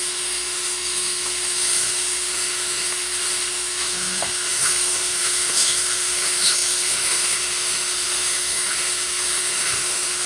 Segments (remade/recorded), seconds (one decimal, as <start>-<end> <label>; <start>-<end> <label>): 0.0-10.3 remade